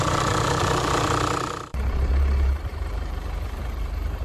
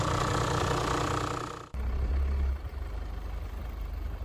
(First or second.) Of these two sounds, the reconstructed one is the first